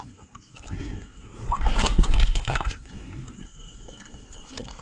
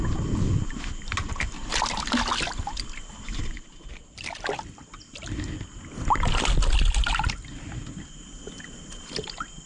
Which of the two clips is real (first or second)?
second